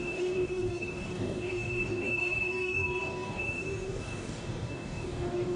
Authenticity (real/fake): fake